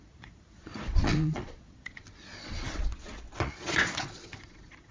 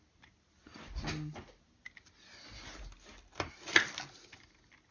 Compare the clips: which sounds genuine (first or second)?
second